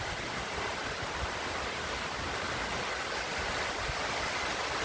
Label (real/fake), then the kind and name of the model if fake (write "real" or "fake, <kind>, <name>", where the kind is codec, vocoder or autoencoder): real